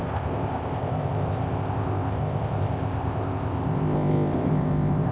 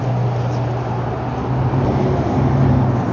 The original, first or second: second